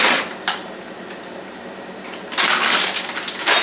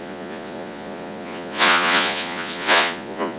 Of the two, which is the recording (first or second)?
first